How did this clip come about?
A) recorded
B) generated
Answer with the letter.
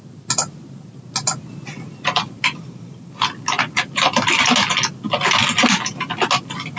A